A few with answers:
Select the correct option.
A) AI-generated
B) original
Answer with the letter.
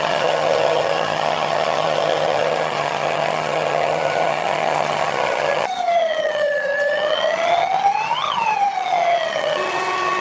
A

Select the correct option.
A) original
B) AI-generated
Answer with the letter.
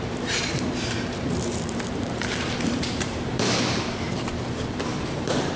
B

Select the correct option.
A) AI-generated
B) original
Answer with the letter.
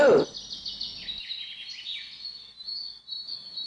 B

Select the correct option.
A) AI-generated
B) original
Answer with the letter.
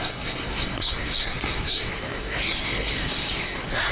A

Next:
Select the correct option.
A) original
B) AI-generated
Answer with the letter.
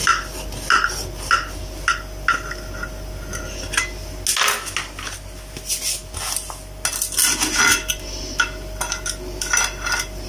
A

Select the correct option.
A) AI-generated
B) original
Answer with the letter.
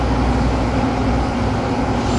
B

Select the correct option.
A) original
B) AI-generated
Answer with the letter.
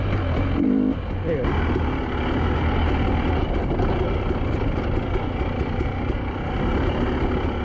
A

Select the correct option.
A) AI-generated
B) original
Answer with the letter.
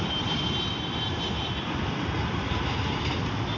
B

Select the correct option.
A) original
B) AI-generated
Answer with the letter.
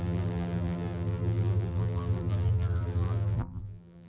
B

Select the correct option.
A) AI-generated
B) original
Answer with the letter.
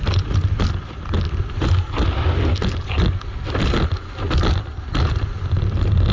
B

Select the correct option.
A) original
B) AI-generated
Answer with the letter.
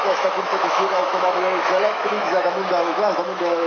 B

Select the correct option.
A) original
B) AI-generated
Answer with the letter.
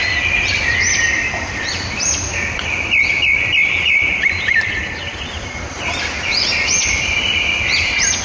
B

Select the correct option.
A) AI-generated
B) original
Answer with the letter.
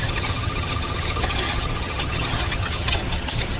A